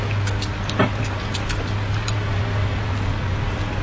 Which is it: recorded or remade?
recorded